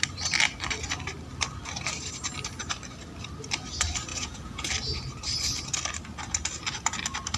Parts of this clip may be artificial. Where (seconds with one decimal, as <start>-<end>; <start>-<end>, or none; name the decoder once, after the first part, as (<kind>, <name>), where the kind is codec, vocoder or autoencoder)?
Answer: 4.1-4.7 (vocoder, Vocos)